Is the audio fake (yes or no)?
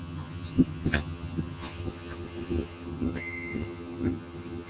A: yes